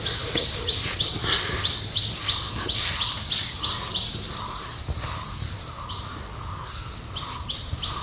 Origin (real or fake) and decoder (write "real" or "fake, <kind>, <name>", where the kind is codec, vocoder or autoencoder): real